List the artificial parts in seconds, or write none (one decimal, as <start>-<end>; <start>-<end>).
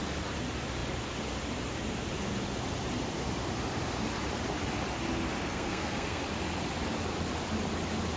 5.4-6.2